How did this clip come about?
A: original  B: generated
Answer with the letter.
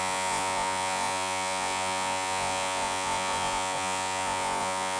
B